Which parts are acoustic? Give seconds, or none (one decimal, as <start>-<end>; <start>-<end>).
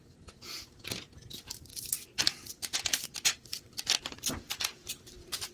none